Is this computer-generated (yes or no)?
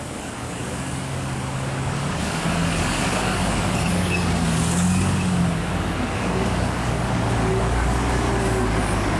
yes